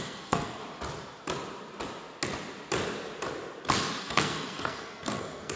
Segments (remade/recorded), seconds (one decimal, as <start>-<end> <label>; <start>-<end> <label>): 0.0-0.6 remade; 0.6-4.0 recorded; 4.0-5.6 remade